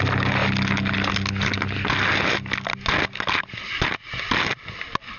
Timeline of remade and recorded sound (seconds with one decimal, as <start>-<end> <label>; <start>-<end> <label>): 0.0-5.2 recorded